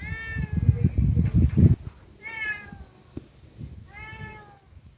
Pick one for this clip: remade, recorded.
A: recorded